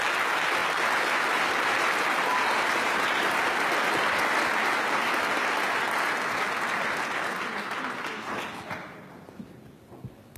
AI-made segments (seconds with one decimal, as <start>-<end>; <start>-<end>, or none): none

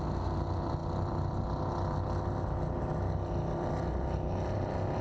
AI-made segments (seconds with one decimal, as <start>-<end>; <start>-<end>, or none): none